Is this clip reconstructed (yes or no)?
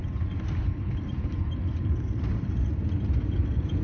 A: no